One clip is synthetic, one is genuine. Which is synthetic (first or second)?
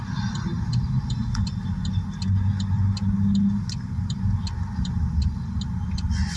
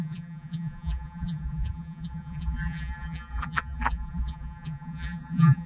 second